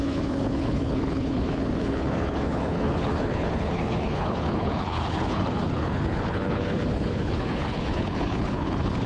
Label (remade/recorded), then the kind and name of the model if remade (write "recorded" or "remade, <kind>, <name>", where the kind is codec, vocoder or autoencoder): remade, codec, HILCodec